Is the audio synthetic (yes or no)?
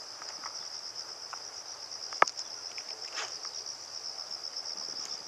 no